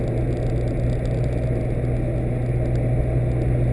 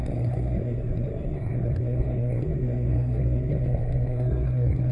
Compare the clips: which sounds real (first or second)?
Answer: first